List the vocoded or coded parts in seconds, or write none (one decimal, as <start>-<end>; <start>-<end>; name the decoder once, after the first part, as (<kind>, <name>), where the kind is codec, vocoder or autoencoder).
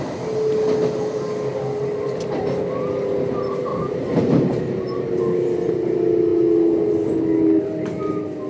3.7-4.8 (vocoder, BigVGAN v2)